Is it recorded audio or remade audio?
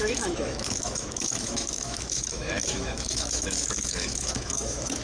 remade